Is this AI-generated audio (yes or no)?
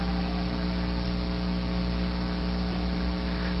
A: no